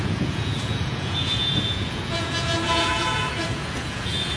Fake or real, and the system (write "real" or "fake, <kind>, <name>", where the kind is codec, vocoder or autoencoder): fake, vocoder, Vocos